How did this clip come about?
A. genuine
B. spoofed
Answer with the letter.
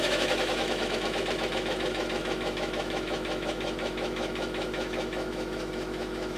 B